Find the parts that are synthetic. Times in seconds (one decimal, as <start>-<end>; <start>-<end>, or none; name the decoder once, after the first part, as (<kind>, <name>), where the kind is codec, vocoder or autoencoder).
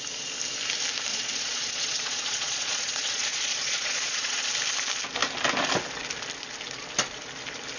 1.1-4.5 (vocoder, Vocos)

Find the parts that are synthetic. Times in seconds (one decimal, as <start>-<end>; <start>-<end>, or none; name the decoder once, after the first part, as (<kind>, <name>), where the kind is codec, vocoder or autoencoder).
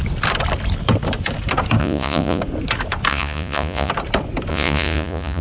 1.8-2.4 (vocoder, Vocos); 3.1-3.9; 4.5-5.4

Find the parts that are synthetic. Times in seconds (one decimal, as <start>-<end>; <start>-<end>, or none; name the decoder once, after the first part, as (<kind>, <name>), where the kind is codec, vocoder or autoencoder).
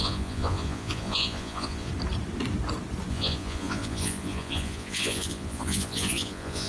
0.0-1.9 (vocoder, Vocos); 3.1-6.7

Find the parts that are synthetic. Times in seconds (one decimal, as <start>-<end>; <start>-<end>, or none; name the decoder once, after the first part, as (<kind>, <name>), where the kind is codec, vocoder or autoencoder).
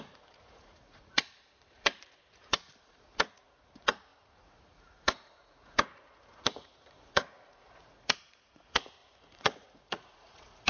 0.0-10.7 (vocoder, Vocos)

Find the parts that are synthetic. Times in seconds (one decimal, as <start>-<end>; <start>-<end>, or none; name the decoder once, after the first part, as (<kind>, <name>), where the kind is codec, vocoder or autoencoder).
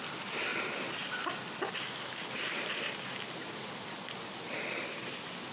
none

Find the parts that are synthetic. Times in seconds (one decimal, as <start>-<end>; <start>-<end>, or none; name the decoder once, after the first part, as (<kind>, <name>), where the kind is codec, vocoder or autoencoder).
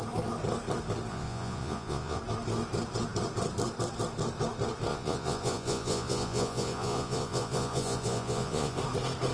1.1-2.2 (vocoder, Vocos); 4.9-8.8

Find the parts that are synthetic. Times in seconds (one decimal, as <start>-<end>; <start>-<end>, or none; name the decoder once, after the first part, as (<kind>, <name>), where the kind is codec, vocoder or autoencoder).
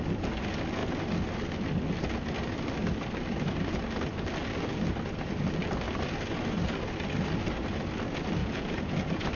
8.4-9.3 (vocoder, Vocos)